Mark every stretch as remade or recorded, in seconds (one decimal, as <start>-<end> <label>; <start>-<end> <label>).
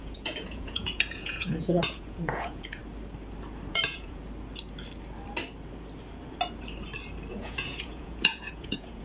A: 0.0-2.8 remade; 2.8-3.7 recorded; 3.7-4.2 remade; 4.2-7.3 recorded; 7.3-9.0 remade